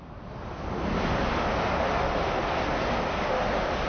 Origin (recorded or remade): recorded